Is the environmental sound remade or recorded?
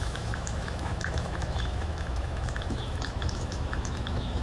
remade